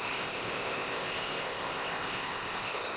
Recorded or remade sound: remade